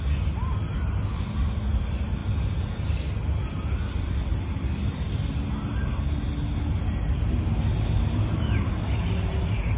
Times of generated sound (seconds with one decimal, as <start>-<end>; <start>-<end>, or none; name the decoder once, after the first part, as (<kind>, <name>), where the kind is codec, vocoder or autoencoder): none